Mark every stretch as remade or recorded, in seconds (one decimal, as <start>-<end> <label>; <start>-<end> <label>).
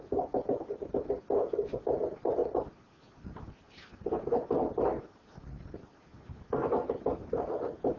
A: 0.0-8.0 recorded